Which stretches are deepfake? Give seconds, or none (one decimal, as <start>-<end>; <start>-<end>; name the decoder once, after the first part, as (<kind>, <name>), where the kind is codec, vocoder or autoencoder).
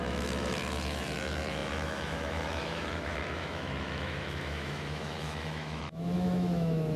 0.0-7.0 (autoencoder, DAC-VAE)